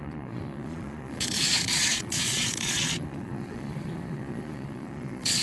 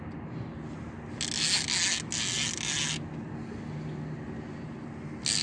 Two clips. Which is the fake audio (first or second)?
first